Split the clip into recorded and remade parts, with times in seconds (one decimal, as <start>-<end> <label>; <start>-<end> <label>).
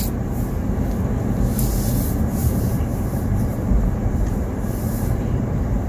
0.0-2.4 recorded; 2.4-5.9 remade